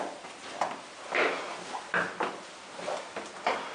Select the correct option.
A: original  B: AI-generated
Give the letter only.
A